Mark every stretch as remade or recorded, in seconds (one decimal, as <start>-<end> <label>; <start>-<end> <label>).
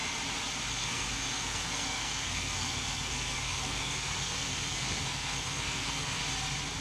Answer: 0.0-0.7 recorded; 0.7-6.2 remade; 6.2-6.8 recorded